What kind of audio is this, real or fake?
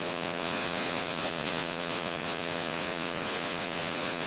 fake